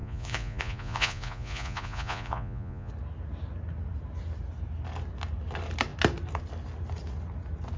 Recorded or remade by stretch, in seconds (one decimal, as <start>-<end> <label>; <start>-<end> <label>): 0.0-2.9 remade; 2.9-7.8 recorded